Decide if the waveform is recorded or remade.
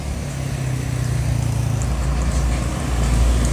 remade